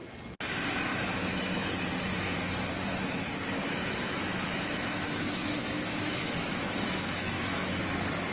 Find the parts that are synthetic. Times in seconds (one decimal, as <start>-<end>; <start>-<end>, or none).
0.9-1.7; 2.9-7.8